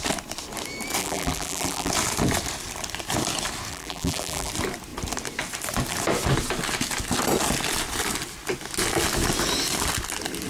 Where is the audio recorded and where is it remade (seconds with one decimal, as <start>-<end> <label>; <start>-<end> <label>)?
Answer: 0.0-1.0 recorded; 1.0-1.9 remade; 1.9-3.7 recorded; 3.7-4.5 remade; 4.5-10.5 recorded